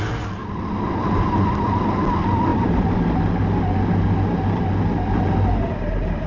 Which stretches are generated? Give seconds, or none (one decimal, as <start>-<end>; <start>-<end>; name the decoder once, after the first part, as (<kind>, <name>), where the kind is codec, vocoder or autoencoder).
none